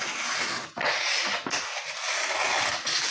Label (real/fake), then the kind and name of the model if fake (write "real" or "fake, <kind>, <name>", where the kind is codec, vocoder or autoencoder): real